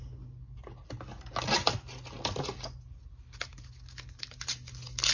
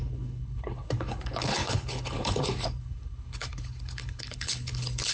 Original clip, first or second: first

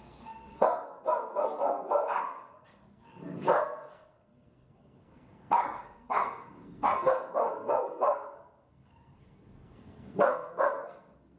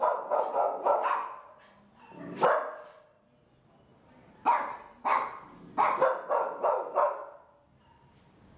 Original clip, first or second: second